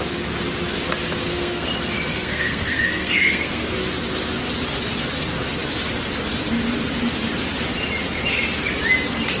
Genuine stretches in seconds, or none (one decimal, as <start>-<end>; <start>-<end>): 0.0-1.2; 1.7-2.1; 3.7-9.4